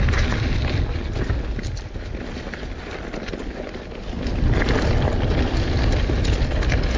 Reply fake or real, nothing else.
real